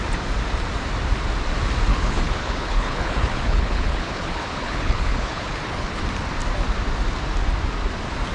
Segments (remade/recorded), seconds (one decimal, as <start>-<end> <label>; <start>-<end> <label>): 0.0-1.9 recorded; 1.9-6.0 remade; 6.0-8.3 recorded